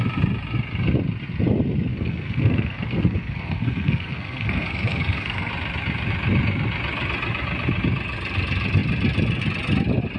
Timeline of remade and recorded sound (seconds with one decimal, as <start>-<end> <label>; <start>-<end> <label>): 0.0-1.9 recorded; 1.9-5.5 remade; 5.5-10.2 recorded